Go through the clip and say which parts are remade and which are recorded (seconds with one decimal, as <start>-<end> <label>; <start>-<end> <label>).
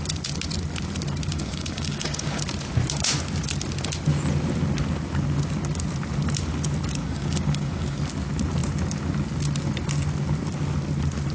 0.0-1.3 recorded; 1.3-2.4 remade; 2.4-7.0 recorded; 7.0-8.0 remade; 8.0-11.3 recorded